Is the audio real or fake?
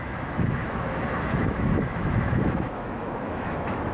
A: fake